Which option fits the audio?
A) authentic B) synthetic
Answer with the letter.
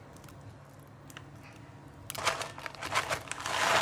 A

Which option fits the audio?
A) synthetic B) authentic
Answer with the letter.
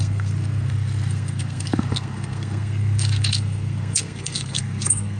A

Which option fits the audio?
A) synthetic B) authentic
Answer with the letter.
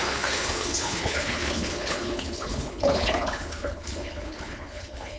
A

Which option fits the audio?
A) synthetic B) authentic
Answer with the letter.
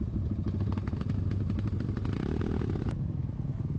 B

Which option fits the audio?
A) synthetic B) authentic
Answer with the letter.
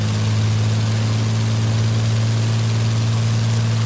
B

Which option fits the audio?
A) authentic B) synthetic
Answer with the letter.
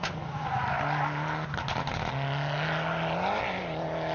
A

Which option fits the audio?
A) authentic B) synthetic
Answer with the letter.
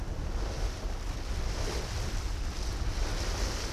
A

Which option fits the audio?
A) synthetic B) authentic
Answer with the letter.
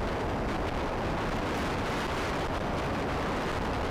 B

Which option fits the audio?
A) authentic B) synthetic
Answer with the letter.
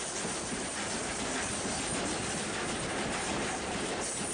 A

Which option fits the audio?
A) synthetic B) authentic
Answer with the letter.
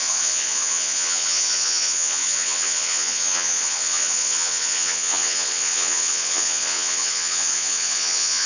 A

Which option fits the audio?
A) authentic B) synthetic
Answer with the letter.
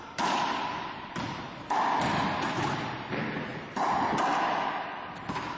A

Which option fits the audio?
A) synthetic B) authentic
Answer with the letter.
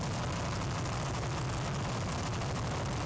B